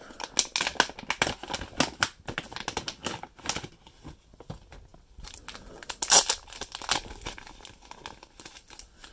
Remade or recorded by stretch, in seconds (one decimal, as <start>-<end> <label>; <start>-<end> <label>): 0.0-9.1 recorded